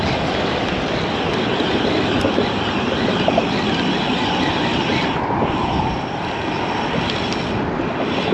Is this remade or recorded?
recorded